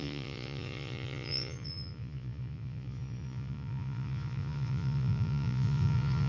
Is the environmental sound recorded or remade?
remade